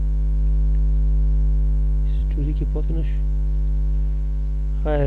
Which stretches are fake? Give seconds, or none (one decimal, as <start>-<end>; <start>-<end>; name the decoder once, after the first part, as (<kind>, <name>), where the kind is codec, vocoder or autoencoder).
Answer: none